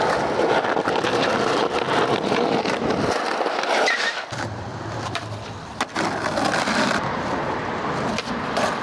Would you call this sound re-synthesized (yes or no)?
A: yes